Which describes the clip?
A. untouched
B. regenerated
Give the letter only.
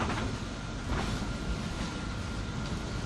A